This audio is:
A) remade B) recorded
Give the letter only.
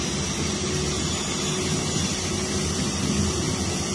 B